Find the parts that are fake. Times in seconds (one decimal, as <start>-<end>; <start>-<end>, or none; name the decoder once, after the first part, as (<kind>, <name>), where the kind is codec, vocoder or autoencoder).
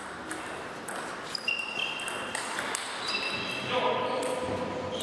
none